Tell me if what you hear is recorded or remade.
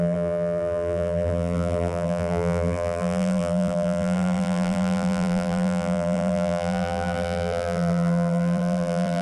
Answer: remade